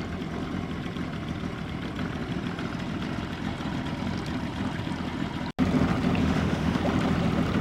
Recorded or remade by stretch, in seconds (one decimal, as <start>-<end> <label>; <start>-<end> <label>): 0.0-6.2 recorded; 6.2-6.8 remade; 6.8-7.6 recorded